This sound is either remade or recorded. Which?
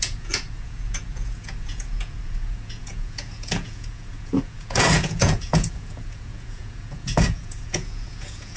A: remade